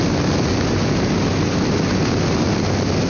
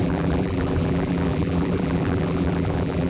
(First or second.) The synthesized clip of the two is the second